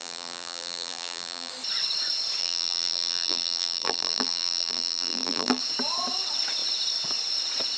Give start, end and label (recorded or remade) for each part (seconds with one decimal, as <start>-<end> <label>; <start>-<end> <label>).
0.0-1.5 remade; 1.5-2.4 recorded; 2.4-5.6 remade; 5.6-7.8 recorded